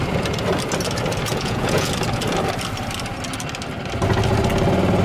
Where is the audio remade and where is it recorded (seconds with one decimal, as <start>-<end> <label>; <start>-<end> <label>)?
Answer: 0.0-1.3 recorded; 1.3-1.9 remade; 1.9-5.0 recorded

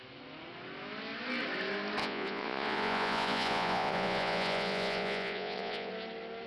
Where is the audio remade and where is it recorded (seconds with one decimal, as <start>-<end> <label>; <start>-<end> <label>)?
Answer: 0.0-2.0 recorded; 2.0-5.9 remade; 5.9-6.5 recorded

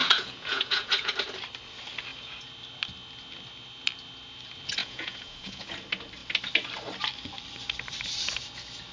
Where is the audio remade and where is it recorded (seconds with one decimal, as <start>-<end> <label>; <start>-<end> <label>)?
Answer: 0.0-1.1 remade; 1.1-4.8 recorded; 4.8-5.7 remade; 5.7-8.9 recorded

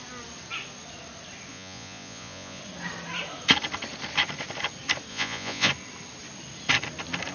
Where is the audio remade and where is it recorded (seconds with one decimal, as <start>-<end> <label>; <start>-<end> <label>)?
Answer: 0.0-1.5 recorded; 1.5-2.6 remade; 2.6-5.1 recorded; 5.1-5.7 remade; 5.7-7.3 recorded

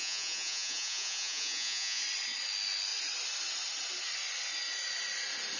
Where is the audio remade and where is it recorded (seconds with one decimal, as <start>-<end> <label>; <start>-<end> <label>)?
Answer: 0.0-2.0 remade; 2.0-5.6 recorded

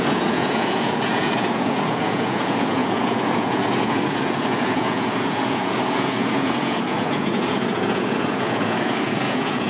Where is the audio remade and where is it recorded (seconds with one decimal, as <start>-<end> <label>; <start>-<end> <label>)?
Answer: 0.0-9.7 remade

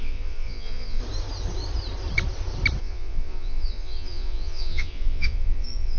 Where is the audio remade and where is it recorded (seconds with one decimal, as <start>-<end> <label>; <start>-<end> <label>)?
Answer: 0.0-1.0 remade; 1.0-2.8 recorded; 2.8-6.0 remade